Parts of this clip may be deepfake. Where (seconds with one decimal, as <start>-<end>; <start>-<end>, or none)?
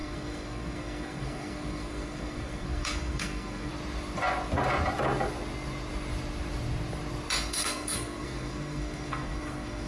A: 0.0-3.7; 7.5-9.9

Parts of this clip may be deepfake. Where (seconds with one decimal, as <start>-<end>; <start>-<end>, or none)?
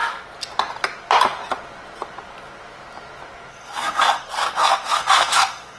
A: 3.5-5.8